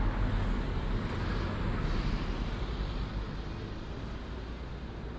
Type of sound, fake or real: real